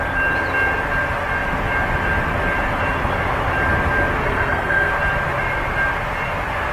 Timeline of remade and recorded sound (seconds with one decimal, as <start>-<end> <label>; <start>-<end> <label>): 0.0-4.2 recorded; 4.2-4.9 remade; 4.9-6.7 recorded